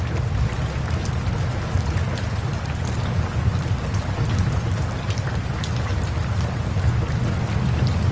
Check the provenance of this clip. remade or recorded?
recorded